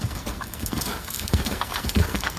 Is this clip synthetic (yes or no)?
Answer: yes